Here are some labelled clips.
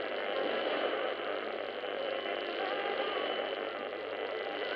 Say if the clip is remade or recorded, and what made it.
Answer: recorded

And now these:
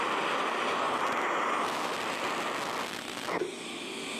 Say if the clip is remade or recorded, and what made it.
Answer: recorded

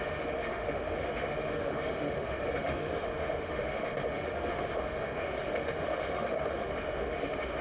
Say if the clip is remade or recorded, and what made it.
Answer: remade, autoencoder, DAC-VAE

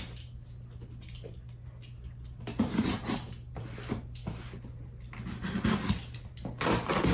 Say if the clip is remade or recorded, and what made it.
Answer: recorded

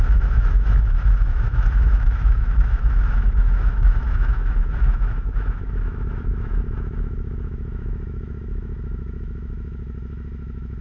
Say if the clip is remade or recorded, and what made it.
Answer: remade, autoencoder, DAC-VAE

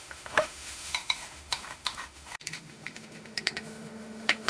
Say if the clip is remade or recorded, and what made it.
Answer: remade, autoencoder, DAC-VAE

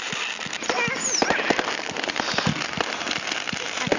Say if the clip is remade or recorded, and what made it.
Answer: recorded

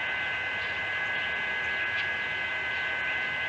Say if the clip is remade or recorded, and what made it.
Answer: recorded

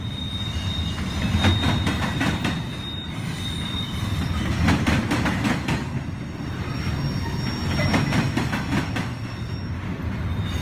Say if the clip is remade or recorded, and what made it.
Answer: recorded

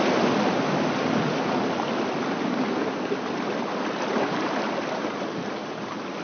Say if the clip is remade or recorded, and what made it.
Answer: recorded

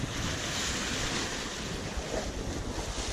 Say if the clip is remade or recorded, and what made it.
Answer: recorded